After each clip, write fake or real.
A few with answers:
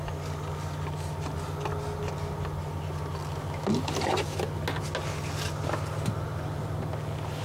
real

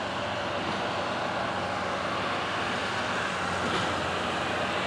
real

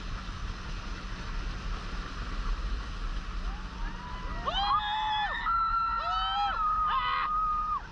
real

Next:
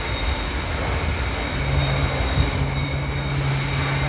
real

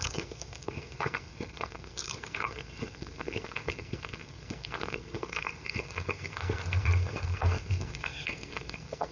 fake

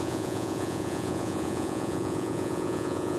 fake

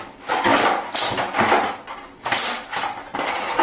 real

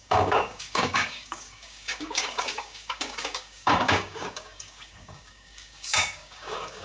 fake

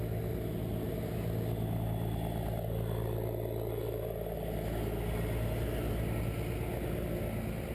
real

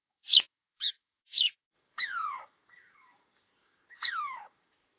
fake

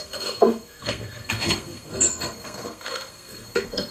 fake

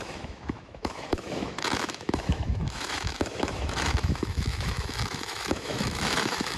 fake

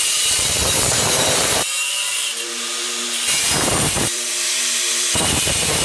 fake